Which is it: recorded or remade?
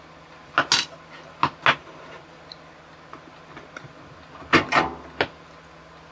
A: recorded